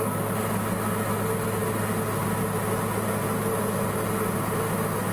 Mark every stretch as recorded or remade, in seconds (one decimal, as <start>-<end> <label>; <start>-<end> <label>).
0.0-5.1 recorded